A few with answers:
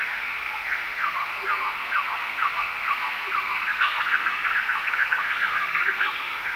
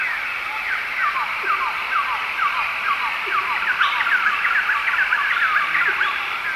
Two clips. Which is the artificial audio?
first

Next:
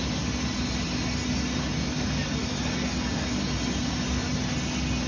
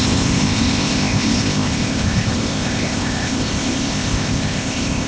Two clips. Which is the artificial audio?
second